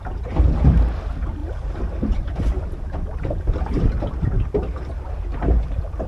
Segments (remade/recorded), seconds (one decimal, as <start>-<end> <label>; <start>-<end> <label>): 0.0-1.4 recorded; 1.4-5.1 remade; 5.1-6.1 recorded